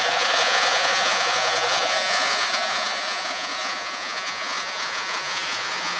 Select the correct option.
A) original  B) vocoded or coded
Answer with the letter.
B